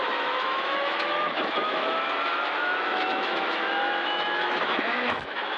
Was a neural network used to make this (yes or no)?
yes